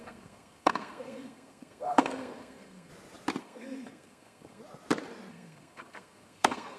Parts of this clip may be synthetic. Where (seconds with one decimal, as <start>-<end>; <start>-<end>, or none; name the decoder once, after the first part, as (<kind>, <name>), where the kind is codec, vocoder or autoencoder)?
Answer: 0.0-2.9 (codec, SNAC); 3.4-4.6; 5.3-6.8